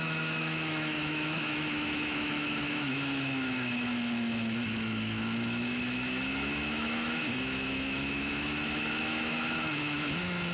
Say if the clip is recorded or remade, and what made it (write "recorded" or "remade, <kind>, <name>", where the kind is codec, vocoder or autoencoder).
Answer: remade, autoencoder, DAC-VAE